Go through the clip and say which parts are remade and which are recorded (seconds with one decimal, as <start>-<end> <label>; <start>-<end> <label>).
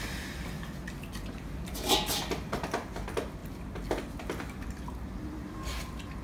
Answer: 0.0-6.2 recorded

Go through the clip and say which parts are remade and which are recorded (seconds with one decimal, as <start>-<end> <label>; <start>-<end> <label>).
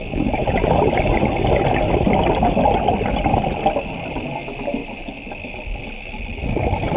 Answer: 0.0-7.0 recorded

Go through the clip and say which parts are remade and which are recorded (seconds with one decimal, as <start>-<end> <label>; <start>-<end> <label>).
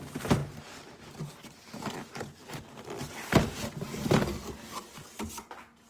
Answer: 0.0-5.9 recorded